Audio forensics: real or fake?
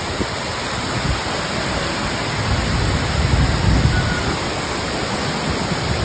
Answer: real